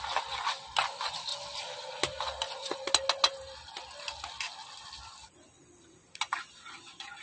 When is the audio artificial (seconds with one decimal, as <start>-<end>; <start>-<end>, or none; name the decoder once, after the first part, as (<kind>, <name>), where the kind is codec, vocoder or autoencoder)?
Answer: none